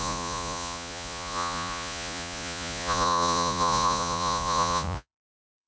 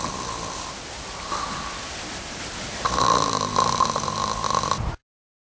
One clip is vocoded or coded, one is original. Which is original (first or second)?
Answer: second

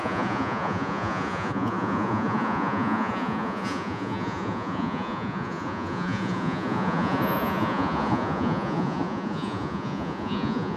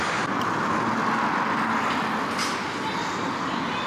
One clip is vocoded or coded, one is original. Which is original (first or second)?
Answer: second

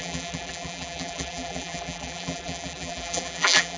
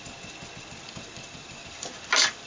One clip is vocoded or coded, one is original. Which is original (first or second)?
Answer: second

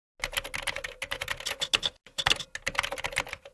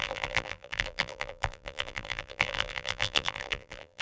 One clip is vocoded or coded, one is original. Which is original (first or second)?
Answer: first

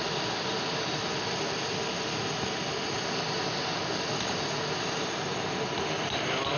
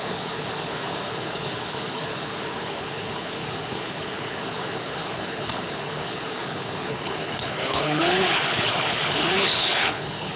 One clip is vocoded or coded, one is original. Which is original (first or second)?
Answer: first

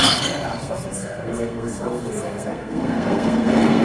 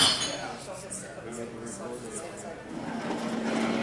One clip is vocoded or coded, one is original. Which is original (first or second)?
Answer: second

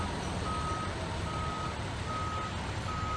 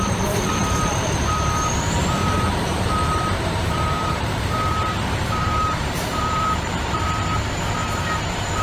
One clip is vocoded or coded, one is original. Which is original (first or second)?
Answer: first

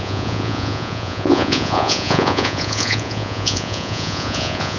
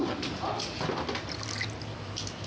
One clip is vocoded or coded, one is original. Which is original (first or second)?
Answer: second